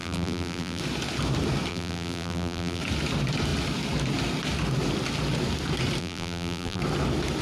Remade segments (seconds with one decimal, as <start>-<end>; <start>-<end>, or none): 0.0-0.8; 1.7-2.8; 6.0-6.8

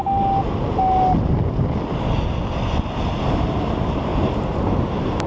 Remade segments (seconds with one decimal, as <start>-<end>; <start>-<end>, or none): 3.2-5.3

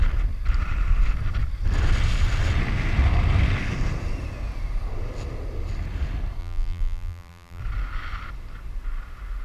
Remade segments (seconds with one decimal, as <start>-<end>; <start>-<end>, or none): 6.4-7.6

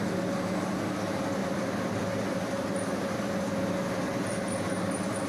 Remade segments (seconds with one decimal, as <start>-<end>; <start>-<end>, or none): none

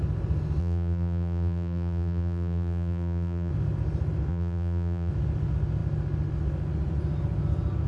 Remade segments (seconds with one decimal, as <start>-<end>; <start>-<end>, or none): 0.6-3.5; 4.3-5.1

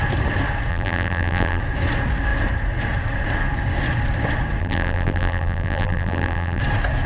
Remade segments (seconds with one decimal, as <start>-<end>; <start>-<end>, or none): 0.7-1.6; 4.6-6.6

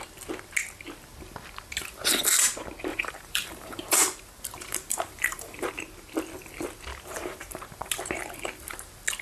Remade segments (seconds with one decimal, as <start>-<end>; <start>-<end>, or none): 2.9-5.7; 6.9-7.9